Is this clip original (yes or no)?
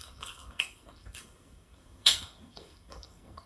no